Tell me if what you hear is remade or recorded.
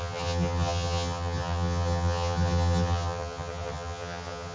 remade